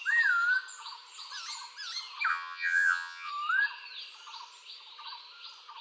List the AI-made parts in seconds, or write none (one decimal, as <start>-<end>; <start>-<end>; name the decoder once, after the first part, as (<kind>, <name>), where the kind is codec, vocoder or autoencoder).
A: 2.3-3.3 (vocoder, WaveNeXt)